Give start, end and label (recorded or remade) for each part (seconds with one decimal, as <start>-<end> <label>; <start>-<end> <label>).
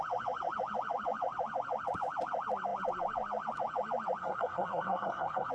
0.0-4.2 recorded; 4.2-5.5 remade